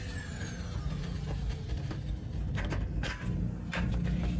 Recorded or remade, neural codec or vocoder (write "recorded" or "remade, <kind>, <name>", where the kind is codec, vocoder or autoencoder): recorded